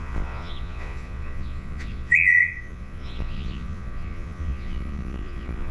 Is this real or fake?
fake